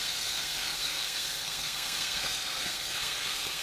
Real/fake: fake